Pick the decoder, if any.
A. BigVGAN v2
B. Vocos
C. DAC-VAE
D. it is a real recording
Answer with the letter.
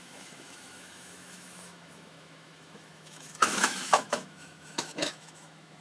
C